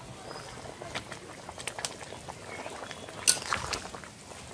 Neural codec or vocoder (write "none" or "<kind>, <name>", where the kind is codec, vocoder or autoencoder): none